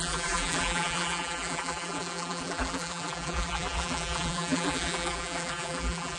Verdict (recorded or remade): remade